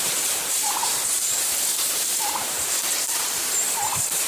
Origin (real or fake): fake